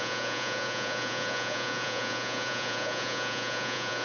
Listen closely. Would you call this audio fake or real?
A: fake